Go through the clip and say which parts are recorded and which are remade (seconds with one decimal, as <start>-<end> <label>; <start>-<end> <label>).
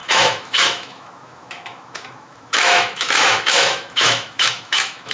0.0-5.1 remade